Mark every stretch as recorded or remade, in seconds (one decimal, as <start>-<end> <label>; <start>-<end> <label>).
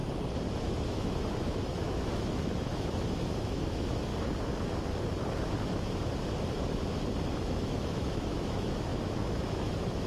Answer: 0.0-0.8 recorded; 0.8-4.1 remade; 4.1-7.3 recorded; 7.3-10.1 remade